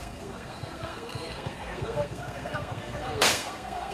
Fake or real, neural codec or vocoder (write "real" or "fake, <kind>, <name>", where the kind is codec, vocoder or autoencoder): fake, codec, SNAC